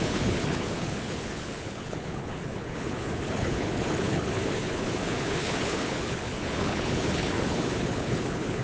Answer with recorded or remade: remade